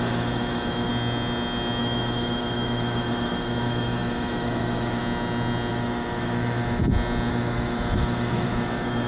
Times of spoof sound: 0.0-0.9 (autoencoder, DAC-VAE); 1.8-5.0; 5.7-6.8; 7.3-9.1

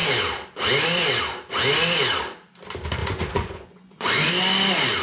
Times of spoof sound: 3.0-4.3 (vocoder, Vocos)

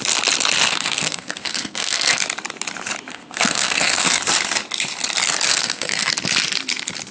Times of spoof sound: 0.7-2.2 (codec, SNAC); 3.1-4.2; 5.5-6.1

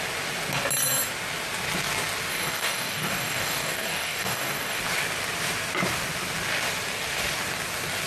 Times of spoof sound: 2.3-4.8 (codec, DAC)